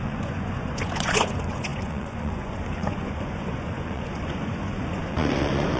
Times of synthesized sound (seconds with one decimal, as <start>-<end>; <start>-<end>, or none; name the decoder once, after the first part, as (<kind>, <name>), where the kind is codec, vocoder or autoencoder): 0.0-5.8 (vocoder, Vocos)